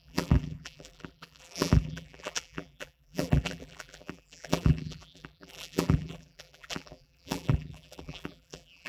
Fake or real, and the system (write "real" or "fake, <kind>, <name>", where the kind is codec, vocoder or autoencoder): fake, vocoder, BigVGAN v2